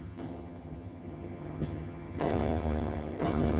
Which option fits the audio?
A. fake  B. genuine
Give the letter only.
A